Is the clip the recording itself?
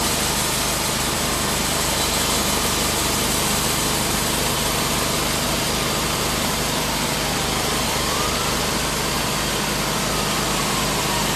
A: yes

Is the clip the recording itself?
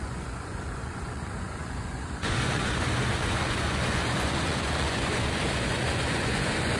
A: no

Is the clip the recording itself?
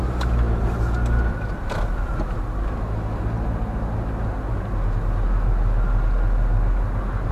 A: yes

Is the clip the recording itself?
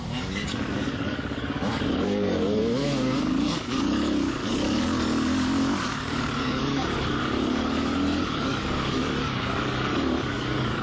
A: no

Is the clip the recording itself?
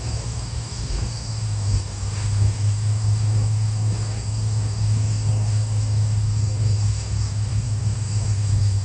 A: no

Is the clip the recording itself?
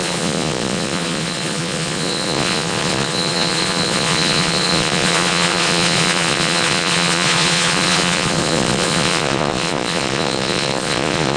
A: no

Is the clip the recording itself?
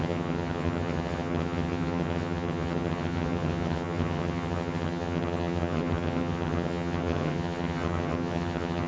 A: no